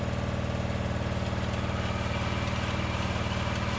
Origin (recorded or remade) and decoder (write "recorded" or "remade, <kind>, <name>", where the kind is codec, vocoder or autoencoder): recorded